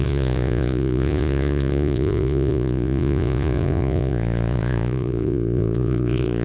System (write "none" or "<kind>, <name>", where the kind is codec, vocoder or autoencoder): vocoder, Vocos